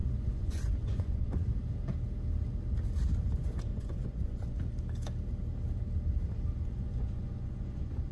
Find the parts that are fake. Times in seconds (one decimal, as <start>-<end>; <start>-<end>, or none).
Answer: 0.0-1.5; 3.7-4.6; 6.6-8.1